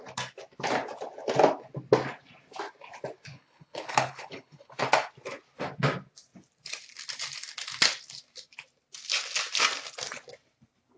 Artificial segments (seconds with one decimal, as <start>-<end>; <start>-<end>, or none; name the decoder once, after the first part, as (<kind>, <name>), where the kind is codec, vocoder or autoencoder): 3.3-4.8 (codec, HILCodec)